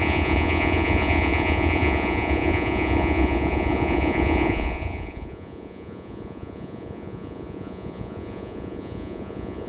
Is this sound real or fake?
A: fake